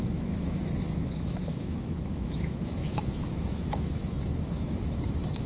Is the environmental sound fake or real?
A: fake